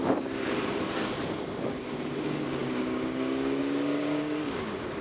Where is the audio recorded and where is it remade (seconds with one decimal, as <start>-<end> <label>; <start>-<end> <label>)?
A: 0.0-1.6 recorded; 1.6-5.0 remade